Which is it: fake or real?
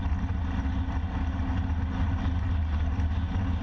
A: real